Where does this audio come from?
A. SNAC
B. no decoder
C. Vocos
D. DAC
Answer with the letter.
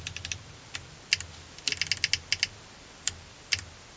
B